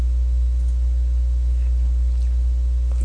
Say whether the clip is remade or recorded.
recorded